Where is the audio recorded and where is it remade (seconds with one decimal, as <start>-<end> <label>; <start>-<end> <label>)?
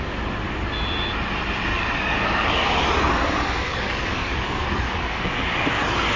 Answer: 0.0-1.7 recorded; 1.7-2.8 remade; 2.8-3.7 recorded; 3.7-5.7 remade; 5.7-6.2 recorded